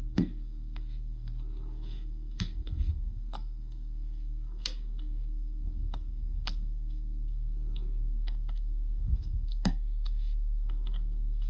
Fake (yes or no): yes